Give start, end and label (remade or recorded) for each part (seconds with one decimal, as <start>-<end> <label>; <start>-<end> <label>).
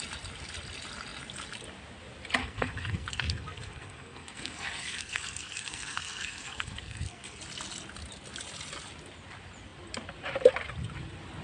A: 0.0-2.4 recorded; 2.4-7.4 remade; 7.4-11.4 recorded